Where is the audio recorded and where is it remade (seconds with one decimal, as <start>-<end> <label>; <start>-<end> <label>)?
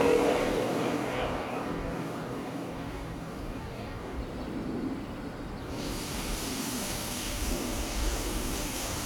0.0-4.2 remade; 4.2-5.6 recorded; 5.6-9.1 remade